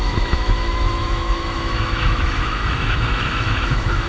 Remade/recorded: remade